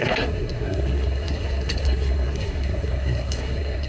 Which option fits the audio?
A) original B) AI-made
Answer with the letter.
B